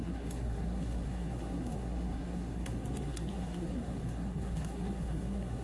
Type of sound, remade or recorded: remade